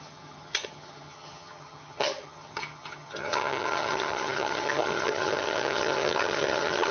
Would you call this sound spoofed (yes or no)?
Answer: yes